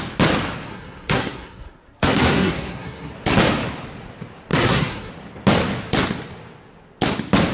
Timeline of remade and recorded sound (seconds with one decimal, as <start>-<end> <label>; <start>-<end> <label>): 0.0-0.7 recorded; 0.7-3.1 remade; 3.1-4.5 recorded; 4.5-5.1 remade; 5.1-7.5 recorded